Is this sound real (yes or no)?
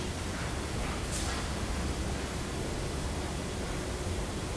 yes